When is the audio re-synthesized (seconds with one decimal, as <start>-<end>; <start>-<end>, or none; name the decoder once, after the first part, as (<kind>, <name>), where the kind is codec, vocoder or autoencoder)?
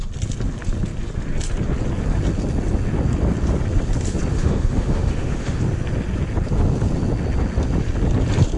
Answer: 4.3-5.6 (autoencoder, DAC-VAE)